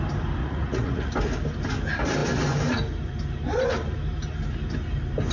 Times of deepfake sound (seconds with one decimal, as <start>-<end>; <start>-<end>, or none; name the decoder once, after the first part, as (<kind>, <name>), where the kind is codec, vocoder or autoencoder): 0.4-1.1 (vocoder, Vocos)